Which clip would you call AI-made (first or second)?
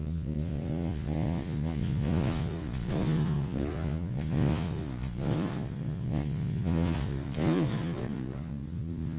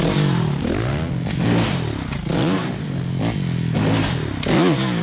first